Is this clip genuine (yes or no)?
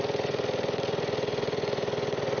no